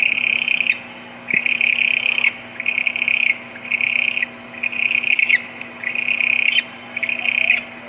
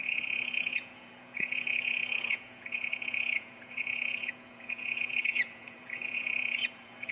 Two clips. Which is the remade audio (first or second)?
second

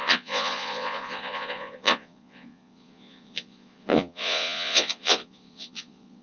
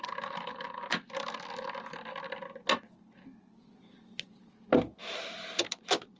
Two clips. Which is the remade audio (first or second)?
first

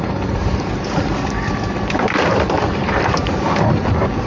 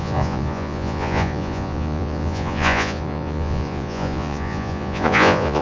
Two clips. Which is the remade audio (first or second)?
second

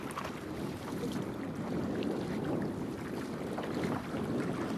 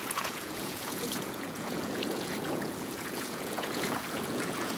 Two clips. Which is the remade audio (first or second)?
second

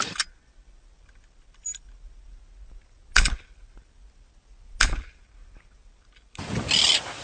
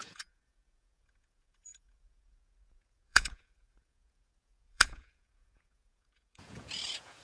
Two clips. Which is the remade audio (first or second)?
second